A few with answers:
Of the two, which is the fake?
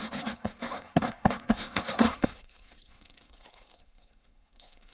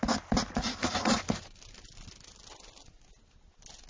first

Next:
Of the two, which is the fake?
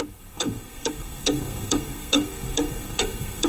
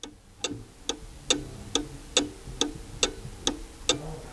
first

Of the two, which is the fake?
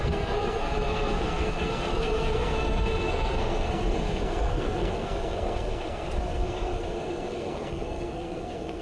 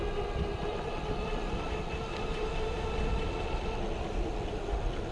first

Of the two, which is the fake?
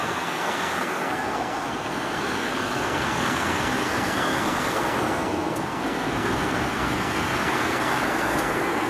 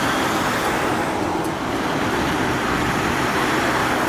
first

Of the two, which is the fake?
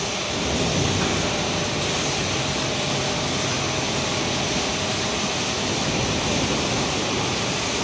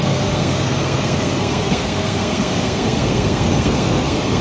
second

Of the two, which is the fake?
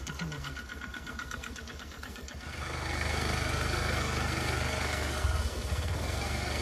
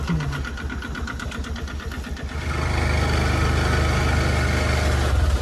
first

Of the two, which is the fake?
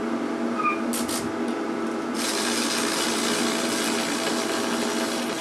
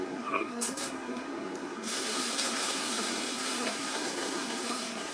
second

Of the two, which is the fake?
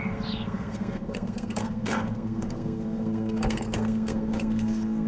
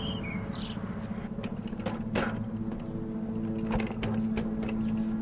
first